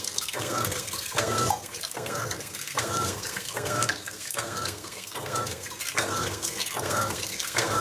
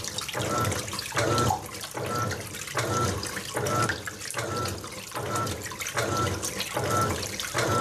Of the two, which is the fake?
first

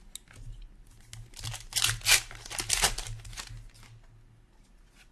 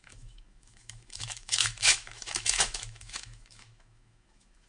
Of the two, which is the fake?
second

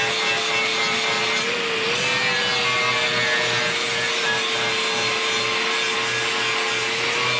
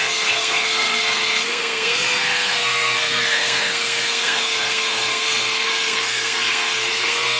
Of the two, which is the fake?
second